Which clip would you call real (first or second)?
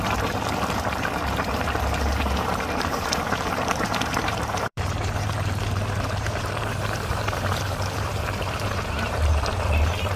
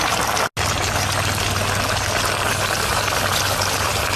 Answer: second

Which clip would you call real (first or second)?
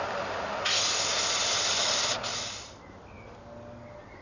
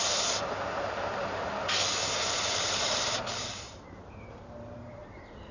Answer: first